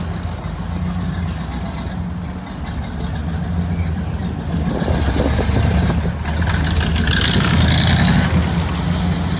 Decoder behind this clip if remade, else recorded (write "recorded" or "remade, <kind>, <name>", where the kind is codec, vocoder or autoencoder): recorded